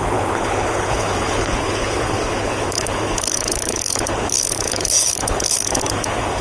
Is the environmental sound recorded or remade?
remade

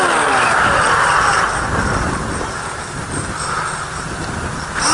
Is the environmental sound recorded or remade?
recorded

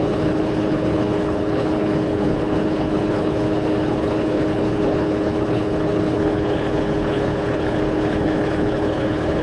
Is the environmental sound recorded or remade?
remade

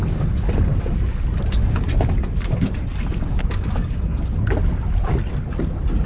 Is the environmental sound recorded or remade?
recorded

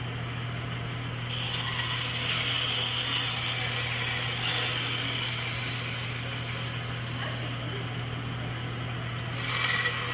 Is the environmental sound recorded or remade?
recorded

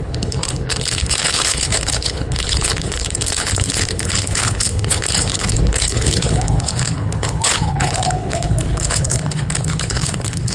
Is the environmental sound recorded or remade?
remade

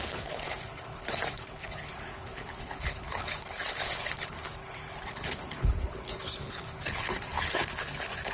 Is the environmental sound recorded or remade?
remade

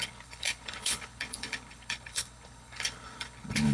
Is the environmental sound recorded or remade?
remade